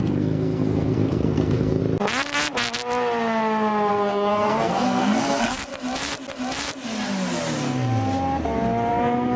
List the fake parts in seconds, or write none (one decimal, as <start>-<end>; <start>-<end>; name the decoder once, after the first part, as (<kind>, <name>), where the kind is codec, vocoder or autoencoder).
0.0-1.8 (codec, SNAC); 3.9-5.7; 8.9-9.4